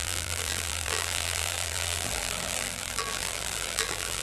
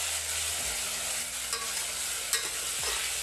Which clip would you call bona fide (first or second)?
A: second